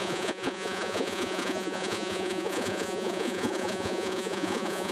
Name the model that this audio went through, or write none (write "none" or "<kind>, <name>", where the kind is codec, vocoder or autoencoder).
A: vocoder, Vocos